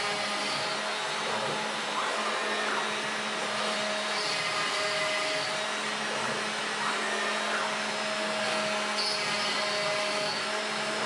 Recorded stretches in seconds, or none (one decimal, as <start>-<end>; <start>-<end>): 0.0-11.1